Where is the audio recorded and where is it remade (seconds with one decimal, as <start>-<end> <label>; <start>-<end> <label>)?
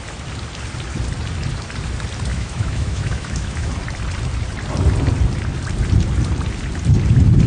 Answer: 0.0-2.3 recorded; 2.3-3.7 remade; 3.7-7.5 recorded